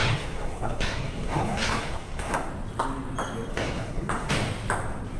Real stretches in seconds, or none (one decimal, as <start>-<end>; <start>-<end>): 2.5-3.5; 4.3-5.2